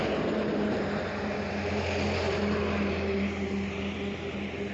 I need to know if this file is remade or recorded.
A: recorded